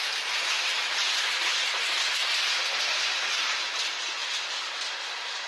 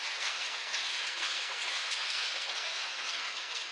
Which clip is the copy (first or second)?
second